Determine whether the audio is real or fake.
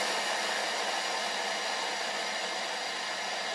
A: real